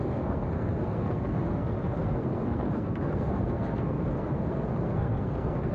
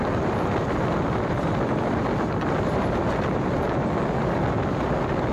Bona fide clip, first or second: second